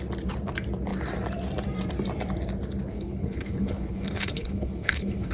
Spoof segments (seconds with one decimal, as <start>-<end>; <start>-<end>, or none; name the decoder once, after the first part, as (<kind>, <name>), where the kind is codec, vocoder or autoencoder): 2.9-5.3 (codec, HILCodec)